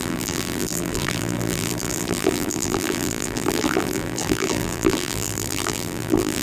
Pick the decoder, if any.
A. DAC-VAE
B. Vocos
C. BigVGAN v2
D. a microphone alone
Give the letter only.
C